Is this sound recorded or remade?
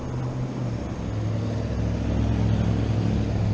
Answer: recorded